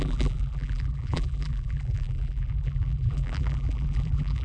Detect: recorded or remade remade